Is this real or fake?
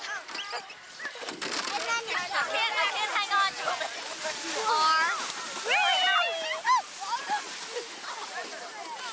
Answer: real